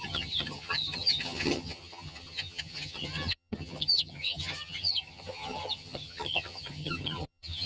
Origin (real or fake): fake